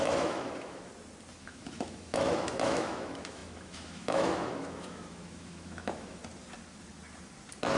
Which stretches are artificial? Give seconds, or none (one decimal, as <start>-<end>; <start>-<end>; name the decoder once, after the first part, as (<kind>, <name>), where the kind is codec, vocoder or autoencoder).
0.0-0.9 (autoencoder, DAC-VAE); 1.4-6.2